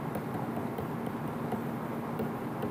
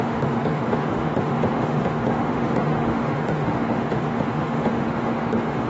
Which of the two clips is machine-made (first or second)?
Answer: second